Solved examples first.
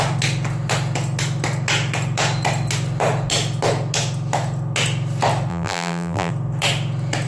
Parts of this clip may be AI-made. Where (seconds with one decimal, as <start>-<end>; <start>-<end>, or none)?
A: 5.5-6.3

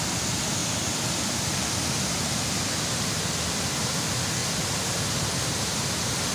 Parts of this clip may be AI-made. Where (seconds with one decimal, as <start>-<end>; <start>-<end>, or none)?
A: none

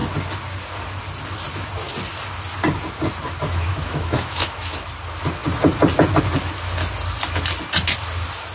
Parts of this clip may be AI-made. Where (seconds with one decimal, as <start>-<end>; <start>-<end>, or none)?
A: 3.7-4.9

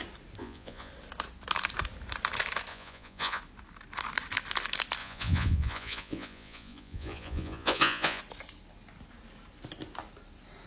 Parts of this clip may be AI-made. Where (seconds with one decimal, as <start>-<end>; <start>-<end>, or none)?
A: 0.4-0.9; 2.7-3.4; 5.0-8.2

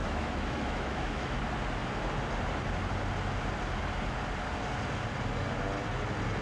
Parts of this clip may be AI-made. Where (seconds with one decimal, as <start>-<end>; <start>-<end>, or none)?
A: 0.0-1.4

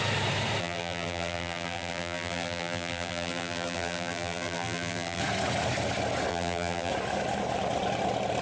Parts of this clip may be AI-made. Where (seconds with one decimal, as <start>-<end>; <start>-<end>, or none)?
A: 0.6-5.2; 6.3-6.9

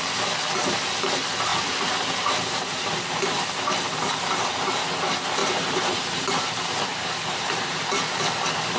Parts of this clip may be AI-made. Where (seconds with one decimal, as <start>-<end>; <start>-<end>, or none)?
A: 1.5-4.0; 5.4-6.4; 6.9-7.8